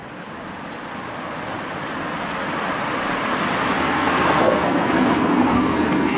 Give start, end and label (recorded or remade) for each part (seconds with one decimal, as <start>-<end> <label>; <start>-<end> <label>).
0.0-3.7 recorded; 3.7-6.2 remade